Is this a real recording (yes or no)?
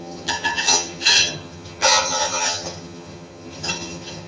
no